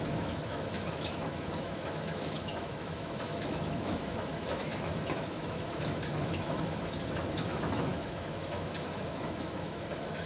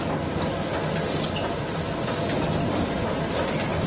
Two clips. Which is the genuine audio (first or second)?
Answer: second